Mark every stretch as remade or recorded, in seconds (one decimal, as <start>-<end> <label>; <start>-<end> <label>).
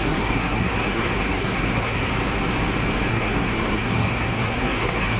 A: 0.0-2.1 remade; 2.1-3.1 recorded; 3.1-5.2 remade